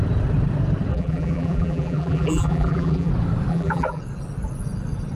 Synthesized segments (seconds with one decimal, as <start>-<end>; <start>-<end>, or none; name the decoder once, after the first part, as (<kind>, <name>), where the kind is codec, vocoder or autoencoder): 0.9-3.1 (vocoder, BigVGAN v2); 3.5-4.0